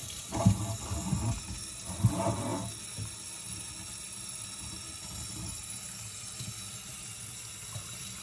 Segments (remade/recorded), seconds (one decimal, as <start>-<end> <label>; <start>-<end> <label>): 0.0-8.2 recorded